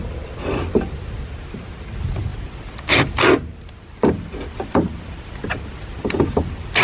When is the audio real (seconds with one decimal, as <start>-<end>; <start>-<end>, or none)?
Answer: 0.0-6.8